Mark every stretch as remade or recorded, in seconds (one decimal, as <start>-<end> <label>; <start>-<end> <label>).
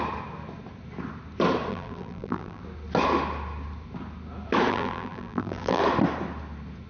0.0-1.7 recorded; 1.7-2.6 remade; 2.6-4.7 recorded; 4.7-5.8 remade; 5.8-6.9 recorded